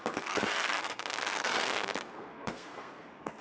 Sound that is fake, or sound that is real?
fake